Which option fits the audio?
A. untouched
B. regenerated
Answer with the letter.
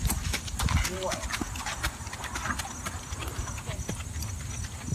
A